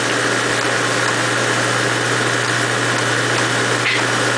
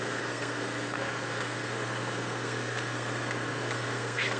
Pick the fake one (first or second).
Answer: second